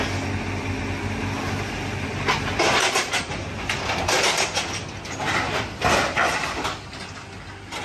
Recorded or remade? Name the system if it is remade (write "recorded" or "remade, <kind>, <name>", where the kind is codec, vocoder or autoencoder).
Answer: recorded